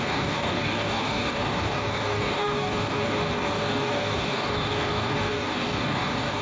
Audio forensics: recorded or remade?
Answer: remade